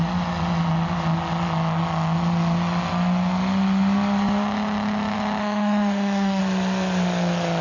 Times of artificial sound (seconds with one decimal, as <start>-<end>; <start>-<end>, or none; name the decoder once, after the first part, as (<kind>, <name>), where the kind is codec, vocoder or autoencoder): 5.4-6.4 (autoencoder, DAC-VAE)